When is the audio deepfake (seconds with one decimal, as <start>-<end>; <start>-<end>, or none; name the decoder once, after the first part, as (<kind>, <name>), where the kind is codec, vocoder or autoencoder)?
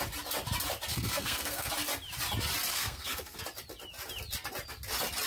0.9-1.7 (codec, SNAC); 2.7-3.4